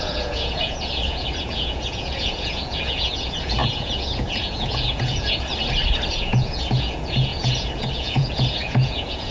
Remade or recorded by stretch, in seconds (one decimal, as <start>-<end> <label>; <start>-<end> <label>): 0.0-5.5 remade; 5.5-6.1 recorded; 6.1-9.3 remade